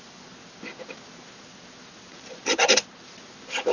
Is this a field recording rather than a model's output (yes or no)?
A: yes